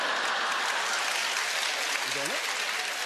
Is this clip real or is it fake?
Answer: real